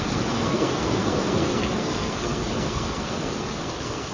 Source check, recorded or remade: remade